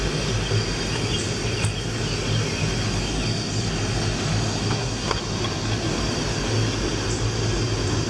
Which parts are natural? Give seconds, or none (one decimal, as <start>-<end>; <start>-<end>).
0.0-4.6; 5.2-8.1